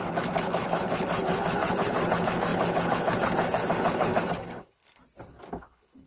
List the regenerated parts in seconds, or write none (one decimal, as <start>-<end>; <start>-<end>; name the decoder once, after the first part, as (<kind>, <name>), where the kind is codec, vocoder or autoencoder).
0.0-5.0 (codec, HILCodec); 5.6-6.1